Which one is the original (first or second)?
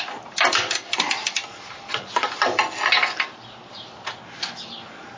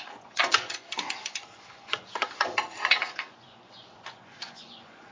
first